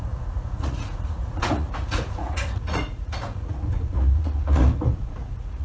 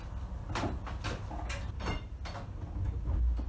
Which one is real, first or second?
second